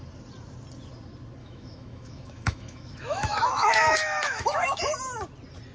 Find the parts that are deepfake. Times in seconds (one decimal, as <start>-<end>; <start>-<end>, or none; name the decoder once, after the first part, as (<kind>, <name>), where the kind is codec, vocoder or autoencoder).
1.4-4.8 (autoencoder, DAC-VAE)